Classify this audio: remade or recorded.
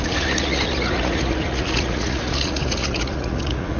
remade